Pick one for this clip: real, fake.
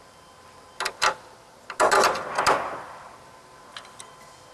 real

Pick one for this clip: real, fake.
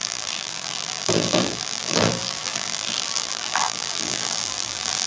fake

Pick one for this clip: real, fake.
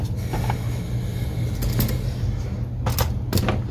real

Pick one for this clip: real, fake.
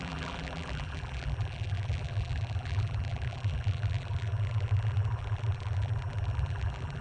fake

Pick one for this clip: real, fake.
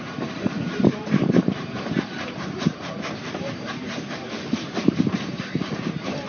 fake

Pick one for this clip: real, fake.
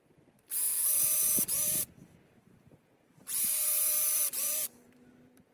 fake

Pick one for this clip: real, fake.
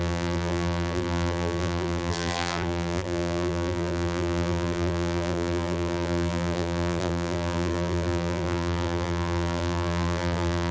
fake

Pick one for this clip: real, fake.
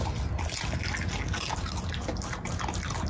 real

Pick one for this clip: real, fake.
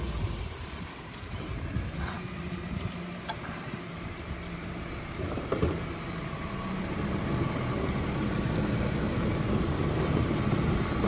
fake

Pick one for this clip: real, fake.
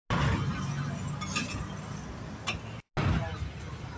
real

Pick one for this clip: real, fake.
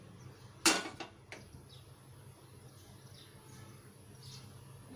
real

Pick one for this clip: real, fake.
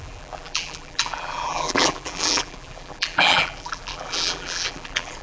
fake